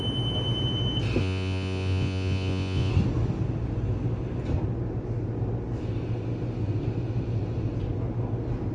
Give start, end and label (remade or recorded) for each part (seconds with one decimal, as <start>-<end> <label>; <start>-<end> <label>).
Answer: 0.0-1.2 recorded; 1.2-2.9 remade; 2.9-8.7 recorded